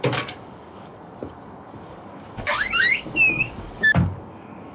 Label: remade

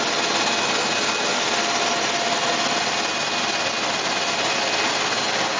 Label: recorded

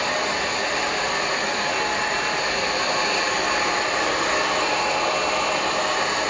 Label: recorded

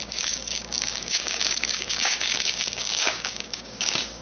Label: remade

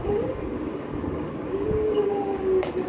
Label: remade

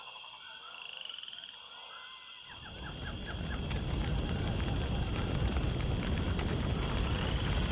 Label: recorded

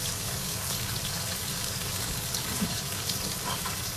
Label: remade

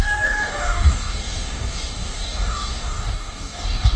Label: remade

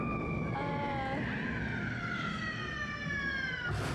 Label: recorded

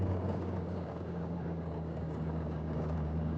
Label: remade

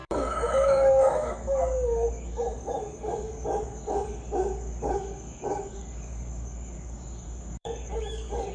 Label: remade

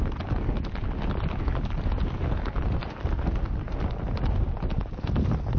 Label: recorded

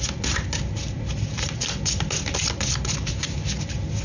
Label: recorded